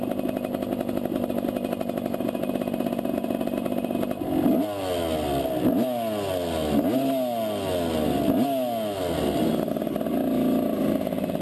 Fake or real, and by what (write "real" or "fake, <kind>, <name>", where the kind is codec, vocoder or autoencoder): real